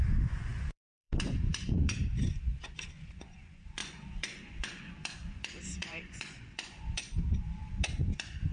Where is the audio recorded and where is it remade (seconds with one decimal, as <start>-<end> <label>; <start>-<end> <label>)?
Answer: 0.0-8.5 remade